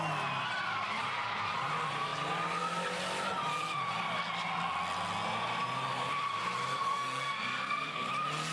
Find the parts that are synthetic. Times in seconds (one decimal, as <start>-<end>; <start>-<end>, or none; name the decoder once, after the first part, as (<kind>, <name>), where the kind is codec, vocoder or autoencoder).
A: 6.9-8.1 (codec, SNAC)